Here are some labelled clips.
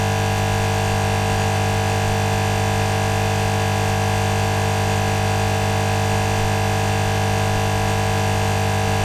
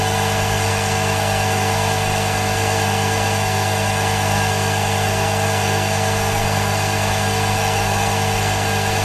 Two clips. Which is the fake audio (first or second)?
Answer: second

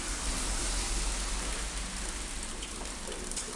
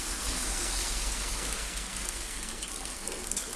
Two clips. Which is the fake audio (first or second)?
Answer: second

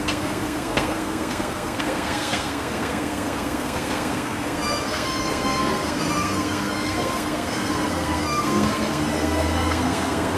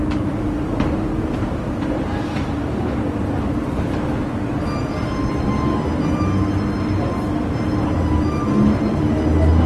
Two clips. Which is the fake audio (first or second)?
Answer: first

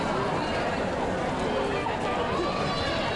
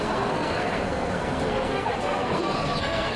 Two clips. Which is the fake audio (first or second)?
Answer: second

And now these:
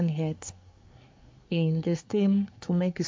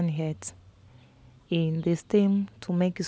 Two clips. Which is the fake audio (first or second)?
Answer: first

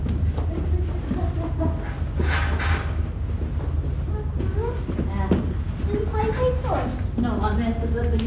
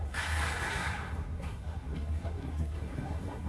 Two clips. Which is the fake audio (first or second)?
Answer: second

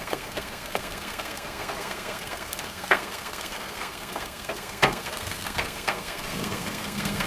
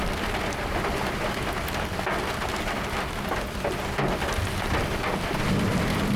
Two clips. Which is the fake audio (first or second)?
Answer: first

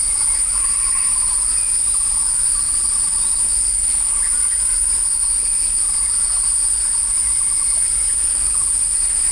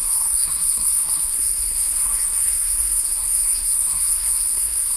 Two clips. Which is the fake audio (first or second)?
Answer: second